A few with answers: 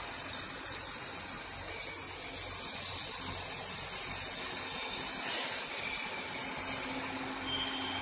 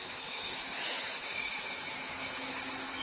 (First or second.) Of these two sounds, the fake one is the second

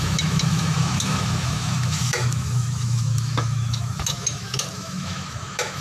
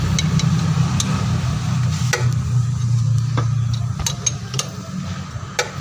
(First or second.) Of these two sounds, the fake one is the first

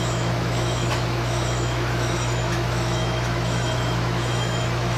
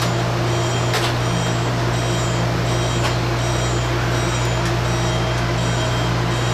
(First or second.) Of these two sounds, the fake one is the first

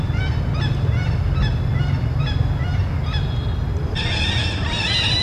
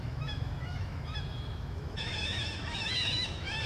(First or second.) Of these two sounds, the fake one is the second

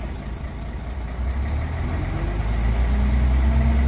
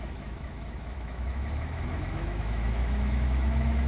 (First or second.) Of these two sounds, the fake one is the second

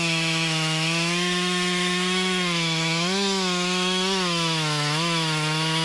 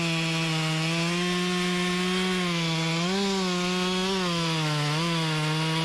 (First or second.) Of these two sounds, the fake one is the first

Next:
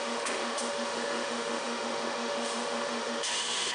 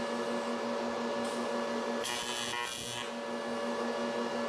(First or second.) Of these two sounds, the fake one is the first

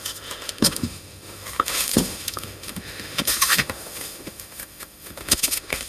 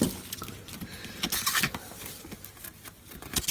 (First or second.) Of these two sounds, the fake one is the first